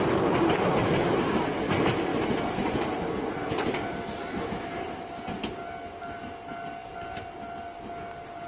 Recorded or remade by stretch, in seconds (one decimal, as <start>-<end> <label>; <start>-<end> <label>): 0.0-8.5 recorded